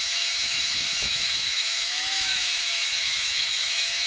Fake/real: fake